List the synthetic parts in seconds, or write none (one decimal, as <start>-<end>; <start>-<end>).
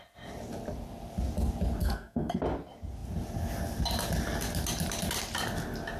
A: 1.8-2.4